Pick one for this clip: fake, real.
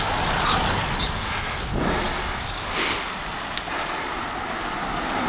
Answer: real